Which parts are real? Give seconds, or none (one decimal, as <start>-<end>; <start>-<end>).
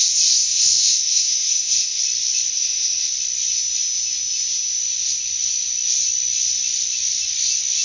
0.0-0.4; 2.0-2.5; 3.1-7.8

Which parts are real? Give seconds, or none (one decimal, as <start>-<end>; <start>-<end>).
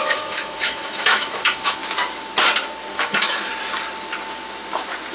1.8-2.9; 3.5-5.1